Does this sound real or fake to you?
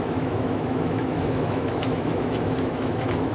fake